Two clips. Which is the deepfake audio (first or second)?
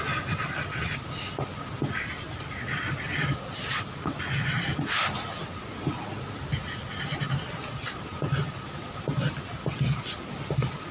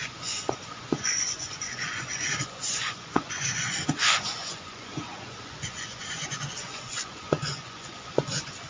second